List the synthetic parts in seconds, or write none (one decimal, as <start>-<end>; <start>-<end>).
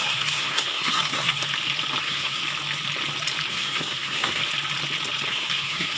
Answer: 0.0-1.4; 2.0-2.4; 3.5-4.4; 5.3-6.0